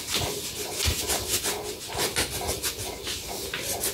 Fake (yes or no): no